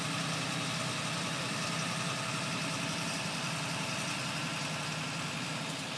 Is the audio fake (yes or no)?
yes